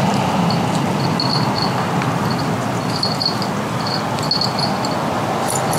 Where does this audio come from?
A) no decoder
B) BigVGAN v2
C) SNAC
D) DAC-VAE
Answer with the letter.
A